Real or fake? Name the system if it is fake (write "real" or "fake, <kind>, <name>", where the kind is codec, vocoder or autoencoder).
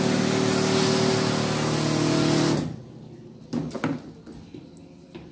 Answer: real